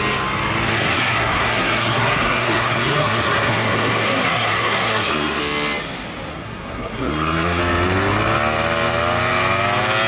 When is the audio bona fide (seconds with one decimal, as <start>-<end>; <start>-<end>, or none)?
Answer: 0.0-0.7; 5.4-6.3; 7.6-10.1